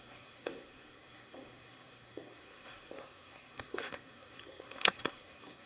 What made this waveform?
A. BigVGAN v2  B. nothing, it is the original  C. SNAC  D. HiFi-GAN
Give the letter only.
C